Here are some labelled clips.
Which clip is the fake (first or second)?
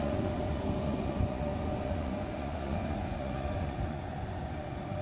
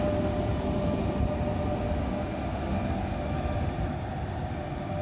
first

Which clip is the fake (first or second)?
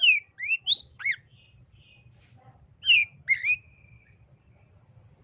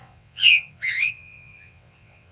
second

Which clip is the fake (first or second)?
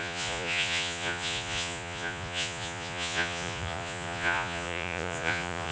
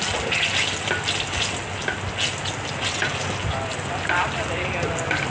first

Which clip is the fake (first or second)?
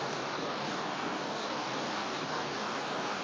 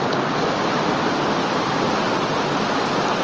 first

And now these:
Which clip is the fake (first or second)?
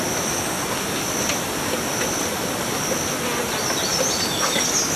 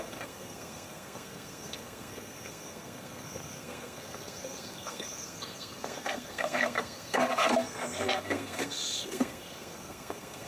second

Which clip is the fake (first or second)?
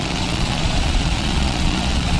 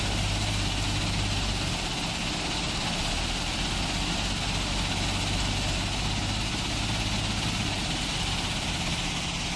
first